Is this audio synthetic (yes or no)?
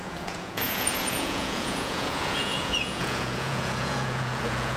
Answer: yes